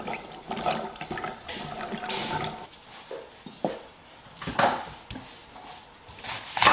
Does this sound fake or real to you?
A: real